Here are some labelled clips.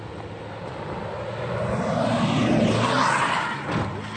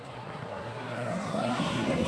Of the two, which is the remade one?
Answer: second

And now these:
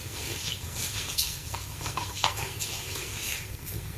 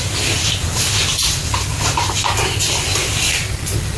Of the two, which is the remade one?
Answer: first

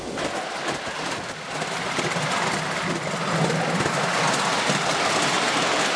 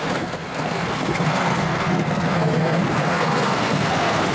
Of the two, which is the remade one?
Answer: second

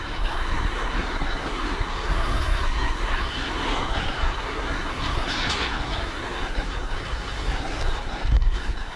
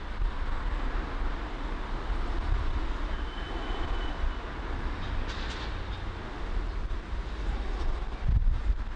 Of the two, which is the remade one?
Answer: first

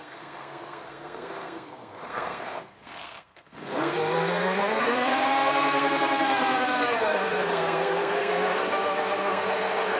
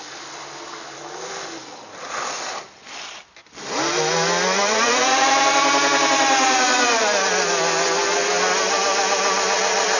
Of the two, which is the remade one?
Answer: first